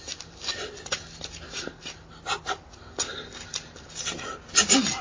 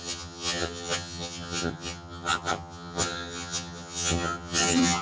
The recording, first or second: first